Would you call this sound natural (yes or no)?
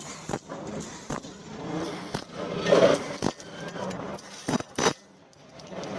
yes